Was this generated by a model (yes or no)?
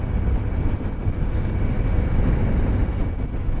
no